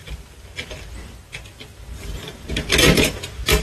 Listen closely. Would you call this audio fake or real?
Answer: real